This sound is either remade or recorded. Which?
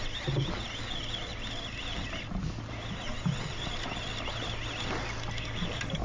recorded